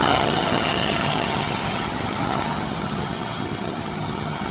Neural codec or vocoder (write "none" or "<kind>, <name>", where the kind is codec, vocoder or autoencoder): vocoder, HiFi-GAN